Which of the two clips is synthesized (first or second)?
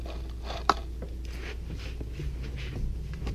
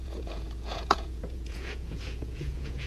second